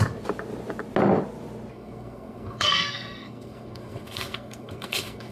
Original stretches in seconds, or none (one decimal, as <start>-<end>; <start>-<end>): 0.0-1.7

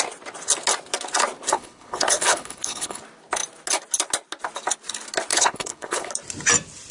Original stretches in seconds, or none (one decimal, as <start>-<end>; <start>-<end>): 0.0-1.5; 3.0-5.3; 6.1-6.9

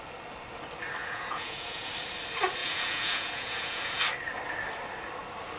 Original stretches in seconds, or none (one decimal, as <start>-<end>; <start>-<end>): 0.0-1.0; 1.9-2.6; 4.0-5.6

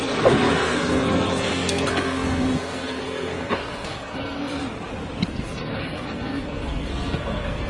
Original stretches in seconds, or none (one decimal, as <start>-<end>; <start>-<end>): 4.6-5.3

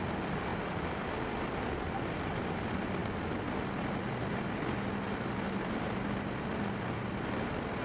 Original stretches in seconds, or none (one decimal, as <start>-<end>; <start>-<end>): 0.0-7.8

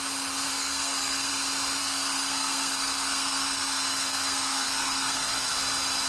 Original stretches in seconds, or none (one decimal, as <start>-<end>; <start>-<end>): 0.0-0.5; 1.3-1.8; 5.5-6.1

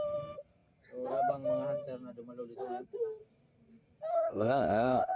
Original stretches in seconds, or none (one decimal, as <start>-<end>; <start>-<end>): 0.0-4.1